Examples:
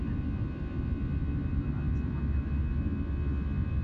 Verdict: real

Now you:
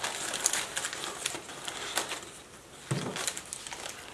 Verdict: real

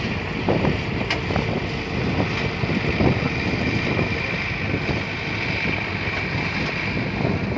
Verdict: real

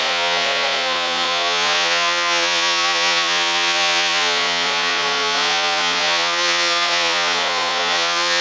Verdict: fake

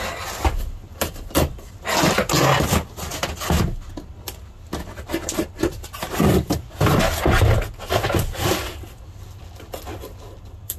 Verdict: real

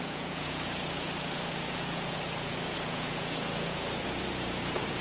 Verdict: fake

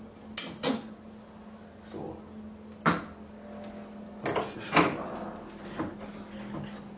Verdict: real